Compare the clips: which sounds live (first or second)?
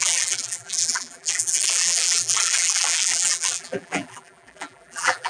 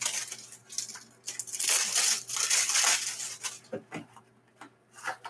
second